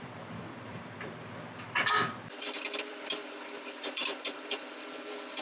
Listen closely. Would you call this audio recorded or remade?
remade